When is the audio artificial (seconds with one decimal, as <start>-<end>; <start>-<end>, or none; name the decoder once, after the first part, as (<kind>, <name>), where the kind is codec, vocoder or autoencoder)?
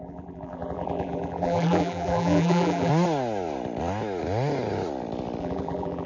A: 0.0-2.9 (vocoder, BigVGAN v2); 5.4-6.1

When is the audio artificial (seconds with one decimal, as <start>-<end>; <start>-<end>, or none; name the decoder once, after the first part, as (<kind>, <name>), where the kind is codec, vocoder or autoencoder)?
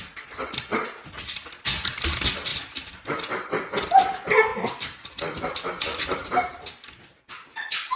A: 2.5-3.7 (vocoder, BigVGAN v2); 4.5-5.4; 6.2-6.7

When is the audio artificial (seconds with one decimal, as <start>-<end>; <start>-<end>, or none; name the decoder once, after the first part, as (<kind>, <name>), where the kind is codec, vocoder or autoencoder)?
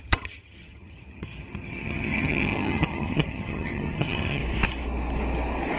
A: 0.0-4.4 (vocoder, HiFi-GAN)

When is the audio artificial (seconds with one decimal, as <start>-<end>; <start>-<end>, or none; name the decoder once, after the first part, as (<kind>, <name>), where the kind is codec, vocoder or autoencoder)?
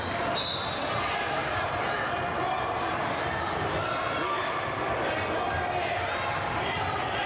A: none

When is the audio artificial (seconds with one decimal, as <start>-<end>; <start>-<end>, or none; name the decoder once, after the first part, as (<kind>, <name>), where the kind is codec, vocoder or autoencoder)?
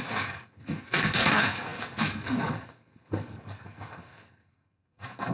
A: 0.0-5.3 (codec, SNAC)